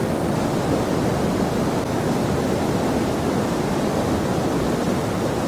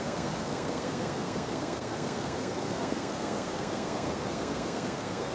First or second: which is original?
first